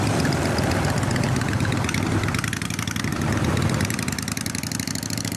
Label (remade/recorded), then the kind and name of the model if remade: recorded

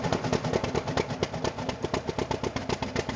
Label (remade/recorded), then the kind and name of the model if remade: recorded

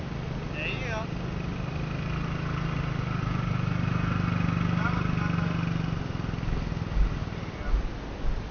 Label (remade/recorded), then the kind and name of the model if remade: recorded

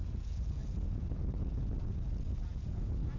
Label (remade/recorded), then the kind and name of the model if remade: remade, vocoder, Vocos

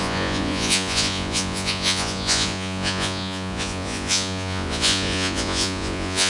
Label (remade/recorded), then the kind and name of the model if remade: remade, vocoder, Vocos